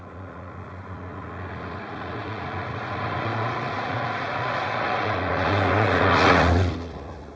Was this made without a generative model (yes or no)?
no